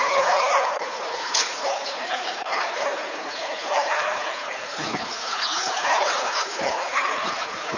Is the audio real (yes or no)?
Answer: no